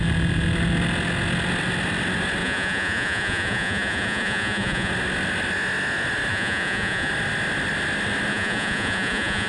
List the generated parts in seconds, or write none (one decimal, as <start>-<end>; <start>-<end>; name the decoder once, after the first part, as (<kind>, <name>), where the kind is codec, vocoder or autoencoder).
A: 2.4-4.9 (vocoder, Vocos); 6.3-7.1; 8.3-9.5